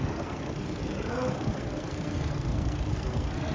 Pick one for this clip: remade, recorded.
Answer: remade